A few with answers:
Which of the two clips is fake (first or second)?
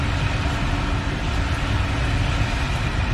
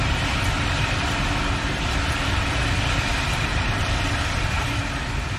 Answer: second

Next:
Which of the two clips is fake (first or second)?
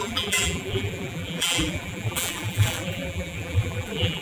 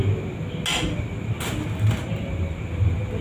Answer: first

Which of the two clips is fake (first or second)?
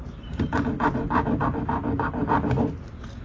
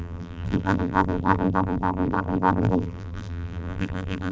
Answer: second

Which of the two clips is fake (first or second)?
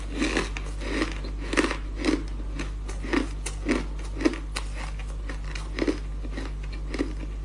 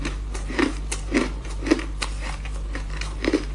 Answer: second